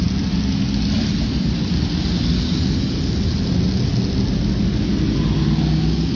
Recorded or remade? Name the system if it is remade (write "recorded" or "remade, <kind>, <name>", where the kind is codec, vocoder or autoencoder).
recorded